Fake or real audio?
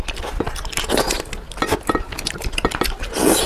real